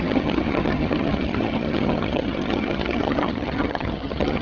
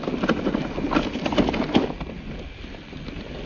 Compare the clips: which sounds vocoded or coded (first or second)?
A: first